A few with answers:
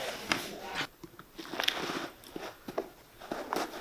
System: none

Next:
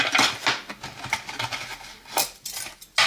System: none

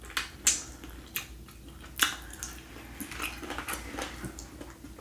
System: none